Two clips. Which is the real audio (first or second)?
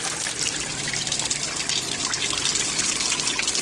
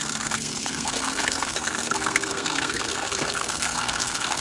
first